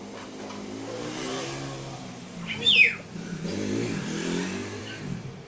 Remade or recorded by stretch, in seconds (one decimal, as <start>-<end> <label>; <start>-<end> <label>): 0.0-5.5 recorded